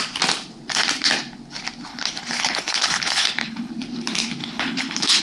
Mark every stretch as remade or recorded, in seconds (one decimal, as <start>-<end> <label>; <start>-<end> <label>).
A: 0.0-1.9 recorded; 1.9-3.7 remade; 3.7-4.4 recorded; 4.4-5.2 remade